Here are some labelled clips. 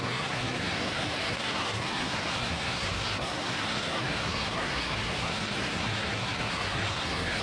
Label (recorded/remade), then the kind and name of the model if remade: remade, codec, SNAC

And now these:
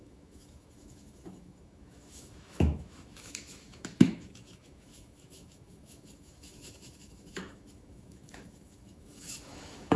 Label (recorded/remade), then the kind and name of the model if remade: remade, autoencoder, DAC-VAE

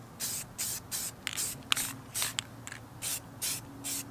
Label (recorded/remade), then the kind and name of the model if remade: recorded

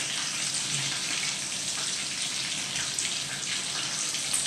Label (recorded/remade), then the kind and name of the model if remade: recorded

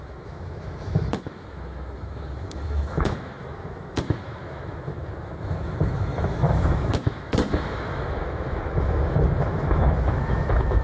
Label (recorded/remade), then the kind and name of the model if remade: remade, autoencoder, DAC-VAE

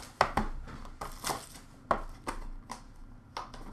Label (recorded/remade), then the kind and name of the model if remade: recorded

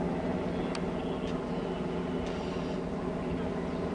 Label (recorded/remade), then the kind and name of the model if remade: recorded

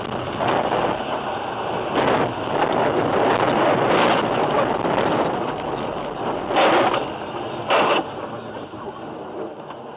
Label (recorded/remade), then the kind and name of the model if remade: recorded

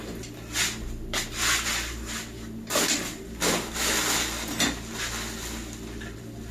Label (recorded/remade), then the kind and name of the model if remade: recorded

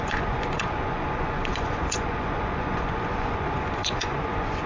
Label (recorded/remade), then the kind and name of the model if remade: remade, vocoder, Vocos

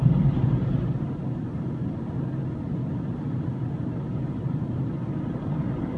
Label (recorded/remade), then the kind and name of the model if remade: recorded